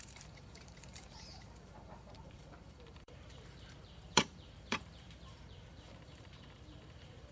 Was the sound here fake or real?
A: fake